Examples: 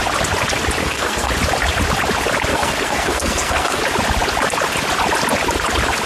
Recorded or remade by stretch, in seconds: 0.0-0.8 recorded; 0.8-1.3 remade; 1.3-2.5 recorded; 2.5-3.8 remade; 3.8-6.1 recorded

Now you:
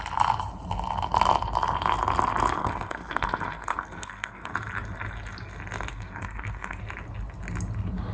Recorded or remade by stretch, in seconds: 0.0-2.6 recorded; 2.6-4.5 remade; 4.5-5.9 recorded; 5.9-6.8 remade; 6.8-8.1 recorded